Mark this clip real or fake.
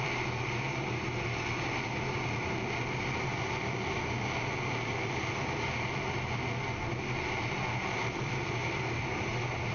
real